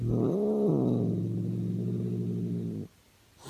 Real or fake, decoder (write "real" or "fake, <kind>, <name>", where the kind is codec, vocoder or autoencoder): real